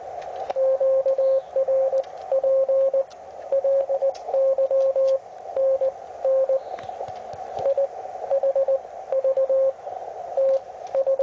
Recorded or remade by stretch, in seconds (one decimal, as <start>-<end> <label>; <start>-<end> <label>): 0.0-11.2 recorded